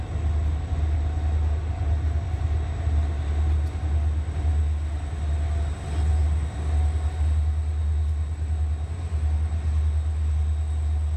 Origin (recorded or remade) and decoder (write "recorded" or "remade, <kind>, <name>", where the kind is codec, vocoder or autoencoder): recorded